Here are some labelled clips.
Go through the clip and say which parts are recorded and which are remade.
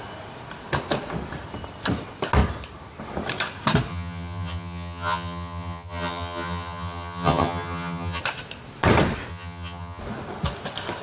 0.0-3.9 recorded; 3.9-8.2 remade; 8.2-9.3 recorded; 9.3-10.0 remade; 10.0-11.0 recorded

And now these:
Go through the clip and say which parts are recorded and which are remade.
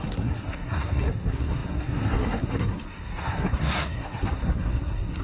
0.0-5.2 remade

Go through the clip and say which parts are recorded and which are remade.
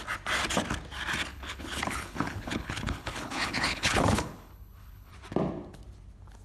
0.0-1.3 recorded; 1.3-5.1 remade; 5.1-6.4 recorded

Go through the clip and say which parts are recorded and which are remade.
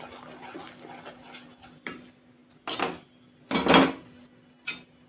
0.0-5.1 recorded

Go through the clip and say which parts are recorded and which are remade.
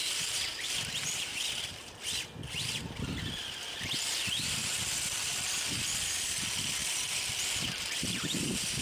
0.0-0.7 remade; 0.7-1.3 recorded; 1.3-1.9 remade; 1.9-6.8 recorded; 6.8-7.7 remade; 7.7-8.8 recorded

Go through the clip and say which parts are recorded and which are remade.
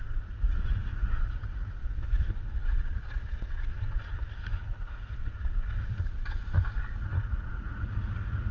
0.0-8.5 remade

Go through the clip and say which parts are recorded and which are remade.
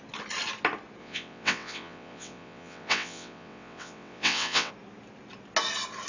0.0-1.0 recorded; 1.0-4.7 remade; 4.7-6.1 recorded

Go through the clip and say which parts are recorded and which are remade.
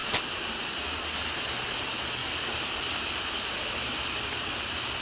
0.0-5.0 recorded